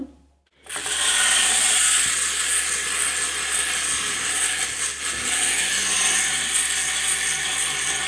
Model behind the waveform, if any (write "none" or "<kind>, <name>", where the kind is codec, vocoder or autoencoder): none